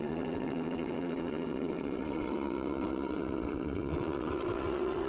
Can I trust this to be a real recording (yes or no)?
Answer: no